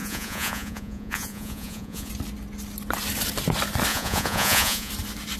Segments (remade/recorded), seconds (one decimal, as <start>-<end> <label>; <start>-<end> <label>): 0.0-2.1 remade; 2.1-3.9 recorded; 3.9-4.9 remade; 4.9-5.4 recorded